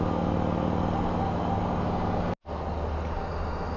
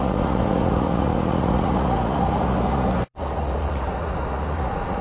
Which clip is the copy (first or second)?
second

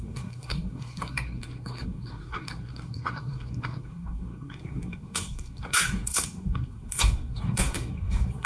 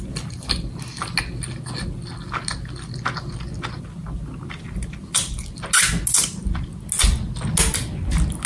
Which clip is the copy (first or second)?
first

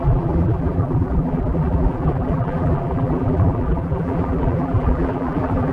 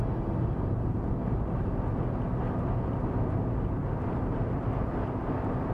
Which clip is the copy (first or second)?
first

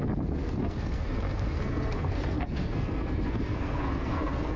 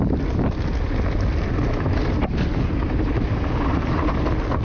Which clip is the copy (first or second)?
first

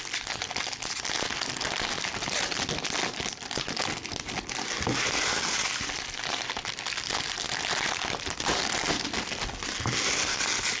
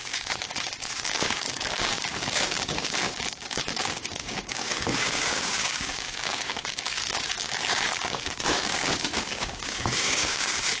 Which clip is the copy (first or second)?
second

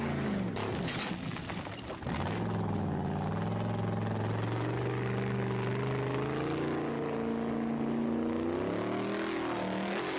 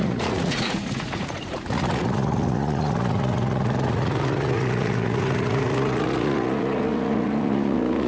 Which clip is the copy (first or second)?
second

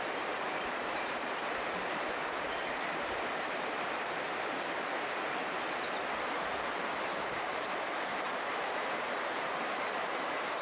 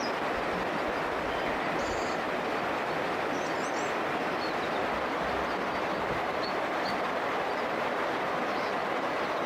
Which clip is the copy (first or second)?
first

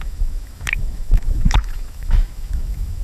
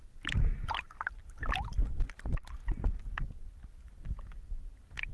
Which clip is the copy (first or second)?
first